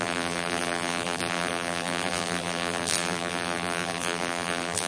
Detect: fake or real fake